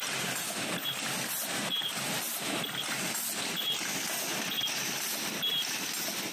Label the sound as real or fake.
real